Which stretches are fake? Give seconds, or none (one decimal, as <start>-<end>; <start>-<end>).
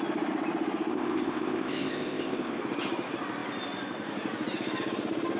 0.9-2.6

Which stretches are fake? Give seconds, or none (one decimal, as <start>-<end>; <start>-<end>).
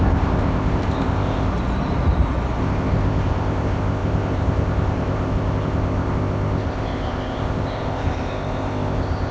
0.0-1.5; 2.6-9.3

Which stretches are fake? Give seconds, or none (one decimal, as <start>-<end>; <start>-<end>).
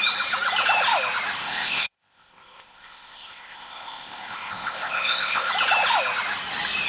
1.4-5.5